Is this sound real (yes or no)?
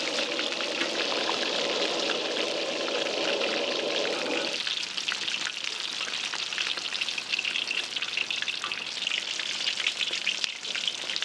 no